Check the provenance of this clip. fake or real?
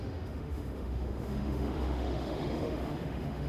fake